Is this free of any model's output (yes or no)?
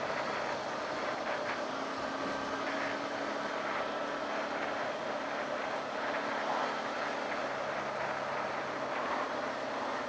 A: yes